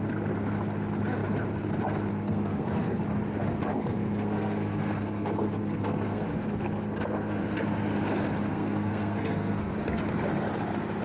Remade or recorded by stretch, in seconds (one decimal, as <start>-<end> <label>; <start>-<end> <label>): 0.0-2.1 recorded; 2.1-3.0 remade; 3.0-3.7 recorded; 3.7-7.4 remade; 7.4-8.5 recorded; 8.5-9.7 remade; 9.7-11.0 recorded